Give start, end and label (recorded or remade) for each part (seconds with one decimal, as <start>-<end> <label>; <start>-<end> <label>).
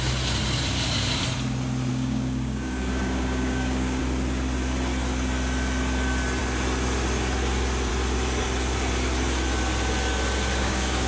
0.0-1.9 recorded; 1.9-4.0 remade; 4.0-10.6 recorded; 10.6-11.1 remade